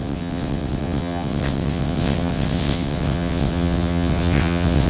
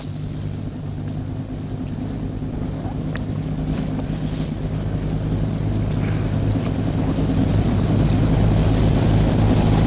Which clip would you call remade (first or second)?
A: first